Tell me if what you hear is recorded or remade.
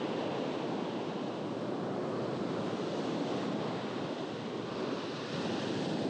recorded